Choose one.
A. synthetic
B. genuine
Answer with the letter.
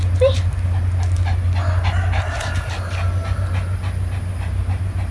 B